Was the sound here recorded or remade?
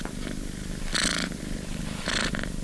recorded